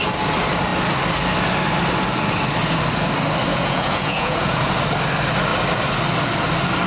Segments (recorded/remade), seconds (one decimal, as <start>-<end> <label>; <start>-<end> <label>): 0.0-3.5 recorded; 3.5-4.7 remade; 4.7-6.9 recorded